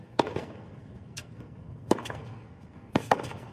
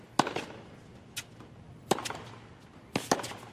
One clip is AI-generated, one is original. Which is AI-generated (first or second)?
first